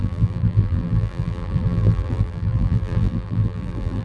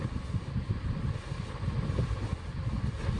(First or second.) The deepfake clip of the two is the first